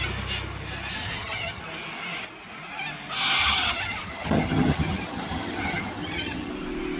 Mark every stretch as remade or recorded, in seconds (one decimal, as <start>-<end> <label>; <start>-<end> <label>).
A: 0.0-1.0 recorded; 1.0-1.6 remade; 1.6-3.4 recorded; 3.4-6.5 remade; 6.5-7.0 recorded